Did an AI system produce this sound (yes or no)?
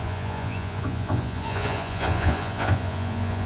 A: yes